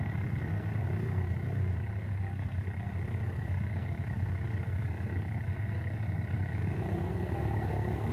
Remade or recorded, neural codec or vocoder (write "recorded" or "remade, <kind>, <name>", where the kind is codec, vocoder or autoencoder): remade, codec, SNAC